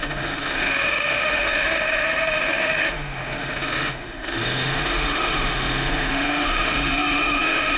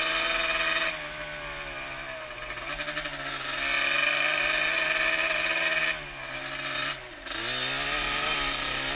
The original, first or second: second